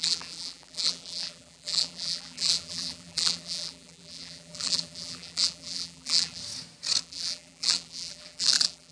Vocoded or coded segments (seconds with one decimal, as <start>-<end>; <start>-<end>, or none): 0.0-6.4; 7.0-8.9